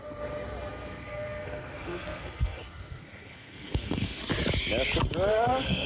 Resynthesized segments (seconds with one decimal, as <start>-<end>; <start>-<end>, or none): 0.7-4.2; 5.3-5.9